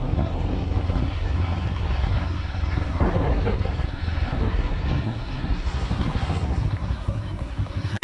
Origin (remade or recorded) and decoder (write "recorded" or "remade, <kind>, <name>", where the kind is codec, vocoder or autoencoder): remade, codec, SNAC